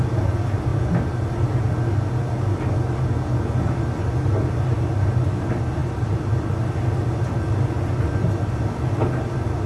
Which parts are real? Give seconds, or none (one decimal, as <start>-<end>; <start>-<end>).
0.0-9.7